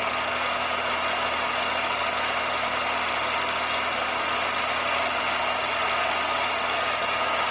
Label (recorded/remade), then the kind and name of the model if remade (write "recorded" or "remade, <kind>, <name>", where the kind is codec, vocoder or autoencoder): recorded